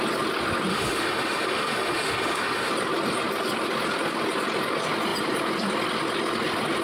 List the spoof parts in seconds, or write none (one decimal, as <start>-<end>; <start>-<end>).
0.7-2.7